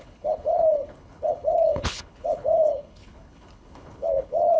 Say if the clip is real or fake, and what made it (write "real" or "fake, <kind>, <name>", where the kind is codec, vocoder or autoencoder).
fake, codec, HILCodec